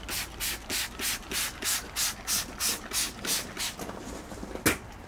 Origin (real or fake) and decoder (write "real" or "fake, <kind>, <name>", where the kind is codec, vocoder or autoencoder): real